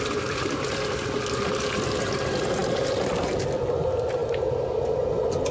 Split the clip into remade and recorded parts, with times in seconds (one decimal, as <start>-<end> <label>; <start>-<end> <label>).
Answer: 0.0-5.5 recorded